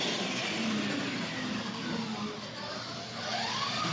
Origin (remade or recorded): recorded